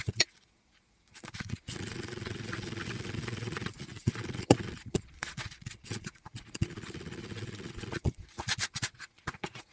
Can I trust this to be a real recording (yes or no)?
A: no